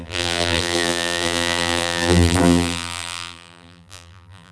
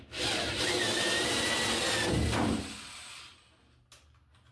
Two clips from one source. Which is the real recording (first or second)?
second